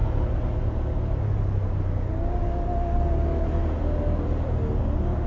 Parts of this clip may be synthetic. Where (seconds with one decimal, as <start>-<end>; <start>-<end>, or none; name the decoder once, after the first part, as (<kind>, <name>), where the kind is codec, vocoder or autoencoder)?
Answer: none